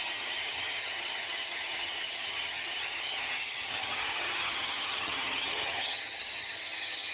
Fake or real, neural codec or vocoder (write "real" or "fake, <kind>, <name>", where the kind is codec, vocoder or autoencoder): fake, vocoder, HiFi-GAN